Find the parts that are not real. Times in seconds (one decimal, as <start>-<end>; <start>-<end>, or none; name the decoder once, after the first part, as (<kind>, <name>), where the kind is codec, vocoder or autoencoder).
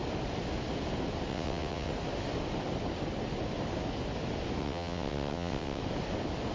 1.3-1.9 (vocoder, WaveNeXt); 4.6-5.8